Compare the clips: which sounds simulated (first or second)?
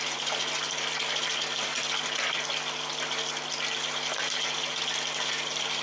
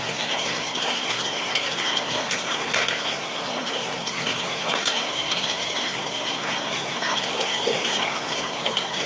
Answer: second